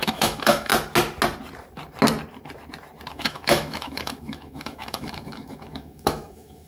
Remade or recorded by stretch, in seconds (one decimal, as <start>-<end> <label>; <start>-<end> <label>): 0.0-0.7 remade; 0.7-3.1 recorded; 3.1-6.7 remade